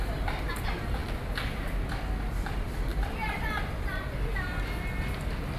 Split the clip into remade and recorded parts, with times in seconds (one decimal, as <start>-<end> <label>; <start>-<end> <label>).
0.0-2.9 recorded; 2.9-3.6 remade; 3.6-5.6 recorded